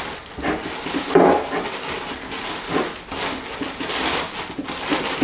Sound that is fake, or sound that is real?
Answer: real